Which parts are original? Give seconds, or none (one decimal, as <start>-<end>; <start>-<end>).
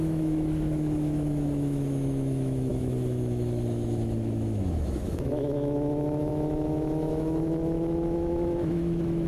none